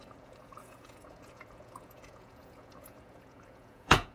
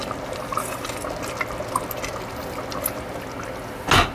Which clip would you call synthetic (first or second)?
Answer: first